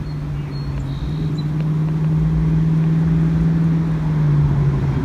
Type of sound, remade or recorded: recorded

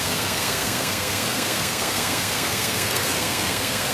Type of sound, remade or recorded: remade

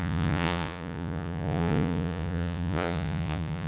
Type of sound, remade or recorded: remade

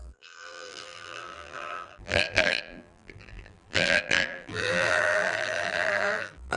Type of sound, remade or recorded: remade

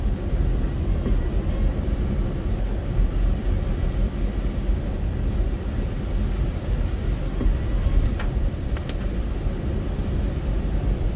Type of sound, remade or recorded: remade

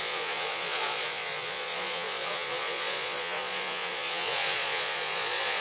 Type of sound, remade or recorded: remade